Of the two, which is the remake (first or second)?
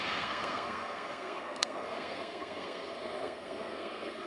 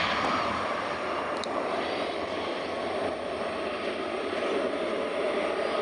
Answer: first